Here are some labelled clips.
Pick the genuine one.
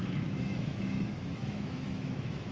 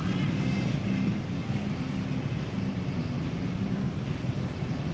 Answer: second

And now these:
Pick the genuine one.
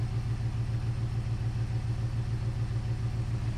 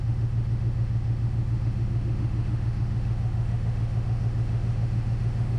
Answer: first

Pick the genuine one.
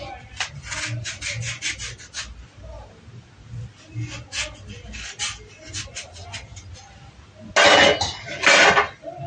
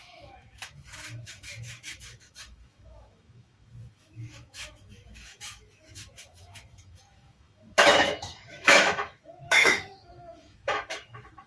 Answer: first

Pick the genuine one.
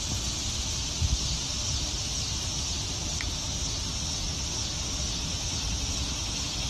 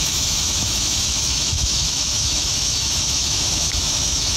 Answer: first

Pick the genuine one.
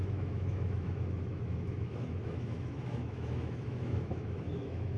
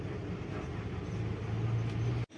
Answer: second